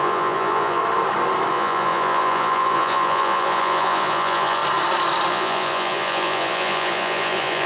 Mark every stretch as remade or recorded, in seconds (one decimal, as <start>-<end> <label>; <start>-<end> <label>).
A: 0.0-0.8 remade; 0.8-1.5 recorded; 1.5-4.6 remade; 4.6-5.3 recorded; 5.3-7.7 remade